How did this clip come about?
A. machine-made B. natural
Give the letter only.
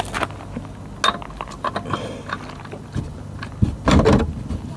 B